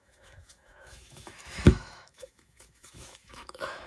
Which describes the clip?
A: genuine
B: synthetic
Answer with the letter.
B